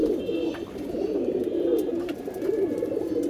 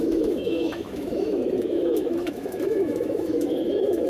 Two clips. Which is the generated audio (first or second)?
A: second